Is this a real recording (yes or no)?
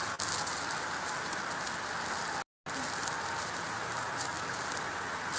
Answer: yes